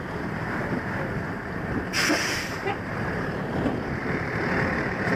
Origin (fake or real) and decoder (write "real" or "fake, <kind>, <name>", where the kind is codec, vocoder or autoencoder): fake, vocoder, BigVGAN v2